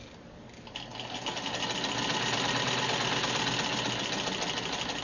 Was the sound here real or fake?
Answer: real